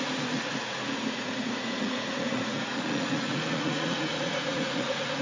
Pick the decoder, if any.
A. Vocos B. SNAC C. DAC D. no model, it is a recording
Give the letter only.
A